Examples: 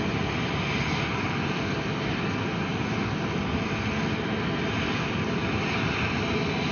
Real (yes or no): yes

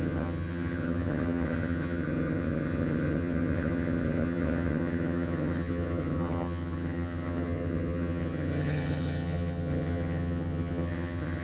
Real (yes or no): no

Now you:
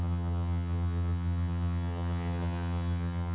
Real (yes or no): no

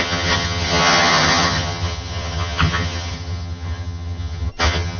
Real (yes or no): no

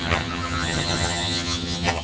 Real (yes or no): no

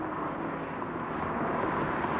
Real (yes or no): yes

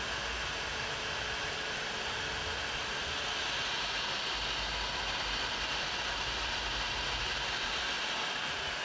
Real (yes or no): yes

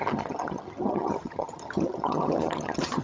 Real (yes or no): no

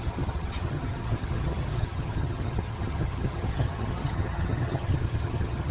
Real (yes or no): no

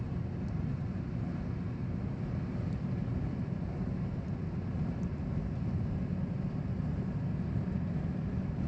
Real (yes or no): yes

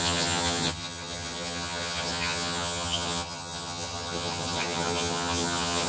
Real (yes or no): no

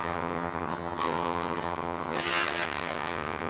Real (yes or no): no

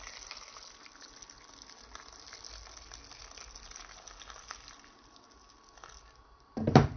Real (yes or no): yes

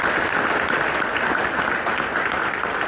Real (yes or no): yes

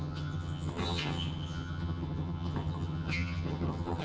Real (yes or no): no